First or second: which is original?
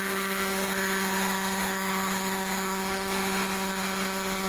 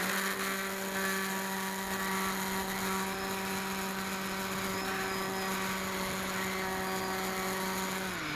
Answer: second